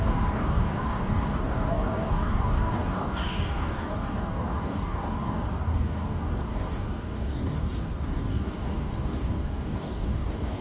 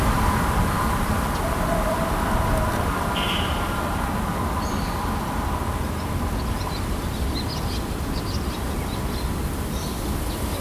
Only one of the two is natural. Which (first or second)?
second